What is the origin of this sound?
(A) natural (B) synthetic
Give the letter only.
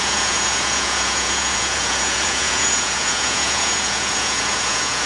B